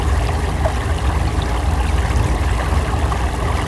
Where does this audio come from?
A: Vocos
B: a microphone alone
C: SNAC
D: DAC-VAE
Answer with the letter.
B